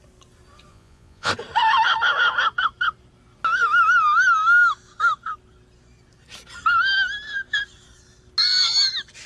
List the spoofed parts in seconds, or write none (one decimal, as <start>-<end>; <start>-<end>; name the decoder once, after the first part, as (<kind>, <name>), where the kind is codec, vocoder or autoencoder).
0.7-1.3 (vocoder, Vocos)